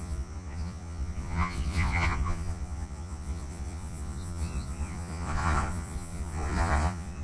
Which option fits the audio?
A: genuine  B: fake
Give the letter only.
B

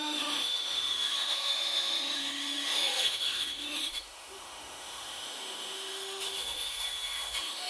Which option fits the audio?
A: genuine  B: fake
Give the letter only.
B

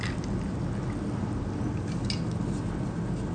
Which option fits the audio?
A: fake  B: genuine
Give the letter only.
B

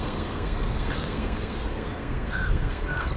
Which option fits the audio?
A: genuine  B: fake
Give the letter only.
B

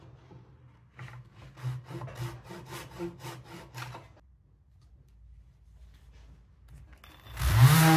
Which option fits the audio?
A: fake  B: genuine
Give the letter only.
B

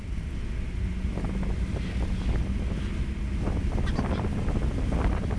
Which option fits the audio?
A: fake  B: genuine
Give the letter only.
B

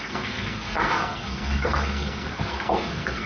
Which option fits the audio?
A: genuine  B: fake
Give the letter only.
B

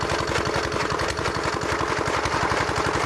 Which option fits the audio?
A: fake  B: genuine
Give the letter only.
B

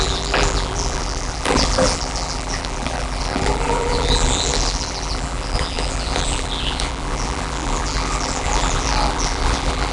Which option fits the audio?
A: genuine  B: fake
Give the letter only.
B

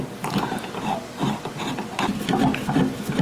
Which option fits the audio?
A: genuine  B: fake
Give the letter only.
A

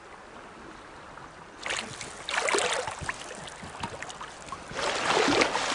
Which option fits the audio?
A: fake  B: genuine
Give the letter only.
B